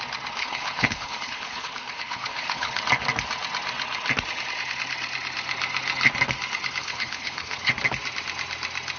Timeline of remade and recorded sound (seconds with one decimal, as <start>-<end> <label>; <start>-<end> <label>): 0.0-0.4 recorded; 0.4-2.8 remade; 2.8-6.8 recorded; 6.8-7.7 remade; 7.7-9.0 recorded